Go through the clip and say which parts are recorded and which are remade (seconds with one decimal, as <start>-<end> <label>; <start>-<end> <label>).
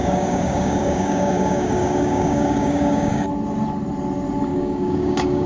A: 0.0-3.3 remade; 3.3-4.5 recorded; 4.5-5.5 remade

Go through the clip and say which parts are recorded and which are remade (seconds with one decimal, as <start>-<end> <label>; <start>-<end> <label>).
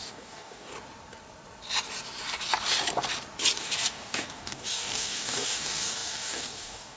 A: 0.0-0.7 remade; 0.7-3.6 recorded; 3.6-7.0 remade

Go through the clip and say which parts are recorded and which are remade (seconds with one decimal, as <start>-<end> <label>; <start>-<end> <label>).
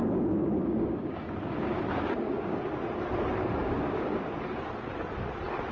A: 0.0-2.6 remade; 2.6-3.6 recorded; 3.6-4.3 remade; 4.3-5.7 recorded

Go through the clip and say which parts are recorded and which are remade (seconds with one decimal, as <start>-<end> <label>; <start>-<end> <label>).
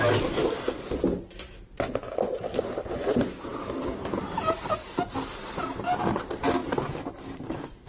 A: 0.0-7.9 recorded